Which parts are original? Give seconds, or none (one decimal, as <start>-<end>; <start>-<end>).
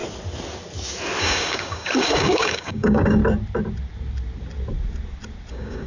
0.0-1.2; 3.2-5.5